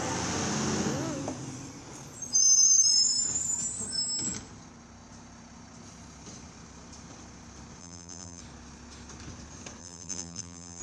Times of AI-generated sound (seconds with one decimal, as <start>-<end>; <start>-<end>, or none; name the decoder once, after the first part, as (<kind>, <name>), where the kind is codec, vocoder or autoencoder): 7.8-8.4 (vocoder, BigVGAN v2); 9.8-10.8